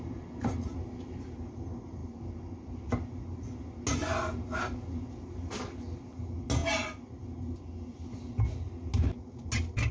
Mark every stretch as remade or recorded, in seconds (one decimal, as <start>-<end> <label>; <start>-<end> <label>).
0.0-9.9 recorded